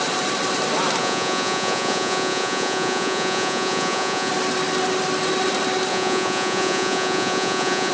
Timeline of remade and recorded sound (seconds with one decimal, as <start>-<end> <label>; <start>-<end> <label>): 0.0-1.0 recorded; 1.0-4.3 remade; 4.3-5.9 recorded; 5.9-7.9 remade